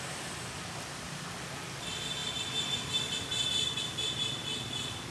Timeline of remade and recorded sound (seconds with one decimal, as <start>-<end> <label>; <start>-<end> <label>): 0.0-5.1 recorded